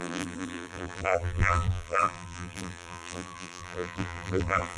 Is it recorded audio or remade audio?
remade